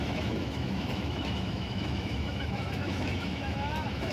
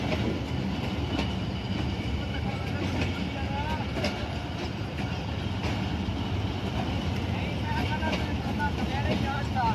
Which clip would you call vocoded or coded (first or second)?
first